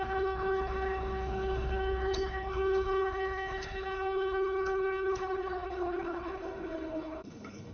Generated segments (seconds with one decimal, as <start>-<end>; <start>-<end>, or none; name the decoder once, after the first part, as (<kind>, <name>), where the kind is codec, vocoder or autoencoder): 0.0-7.7 (codec, HILCodec)